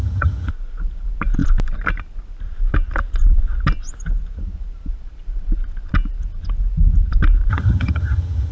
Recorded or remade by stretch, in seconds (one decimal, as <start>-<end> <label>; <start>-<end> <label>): 0.0-0.5 remade; 0.5-7.5 recorded; 7.5-8.5 remade